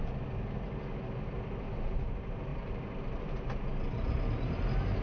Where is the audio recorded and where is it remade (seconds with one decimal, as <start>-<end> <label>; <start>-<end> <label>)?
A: 0.0-5.0 recorded